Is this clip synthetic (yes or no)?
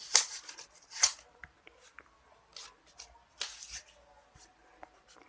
no